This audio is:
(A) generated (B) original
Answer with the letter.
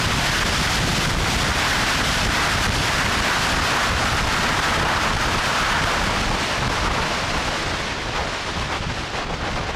B